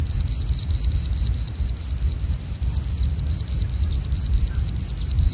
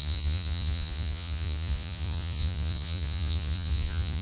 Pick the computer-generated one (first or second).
second